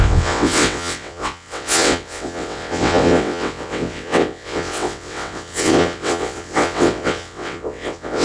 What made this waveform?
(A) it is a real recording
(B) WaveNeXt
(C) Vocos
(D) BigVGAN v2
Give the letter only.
B